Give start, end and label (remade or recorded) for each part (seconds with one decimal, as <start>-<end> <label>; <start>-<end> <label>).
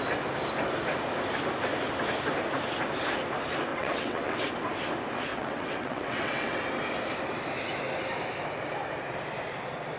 0.0-3.7 recorded; 3.7-4.5 remade; 4.5-5.3 recorded; 5.3-6.6 remade; 6.6-10.0 recorded